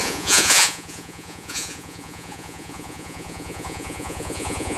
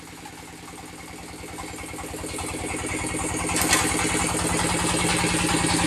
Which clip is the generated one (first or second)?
first